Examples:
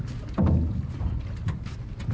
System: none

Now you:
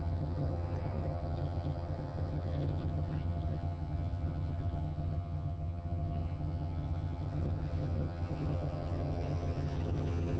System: vocoder, HiFi-GAN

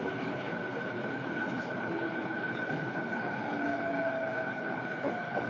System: codec, HILCodec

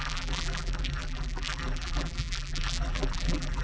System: vocoder, BigVGAN v2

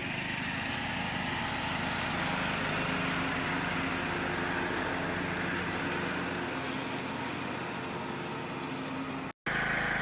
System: none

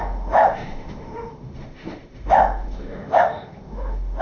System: autoencoder, DAC-VAE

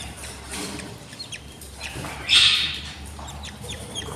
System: vocoder, BigVGAN v2